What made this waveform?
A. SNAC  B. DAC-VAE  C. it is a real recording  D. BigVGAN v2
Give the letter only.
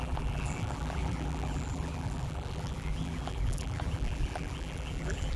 D